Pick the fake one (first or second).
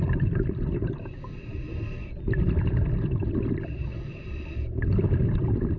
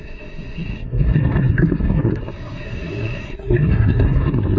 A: second